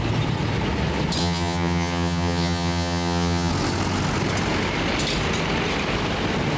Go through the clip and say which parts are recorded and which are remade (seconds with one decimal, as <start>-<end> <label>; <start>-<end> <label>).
0.0-1.2 recorded; 1.2-3.5 remade; 3.5-6.6 recorded